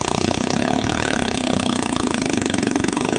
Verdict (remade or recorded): remade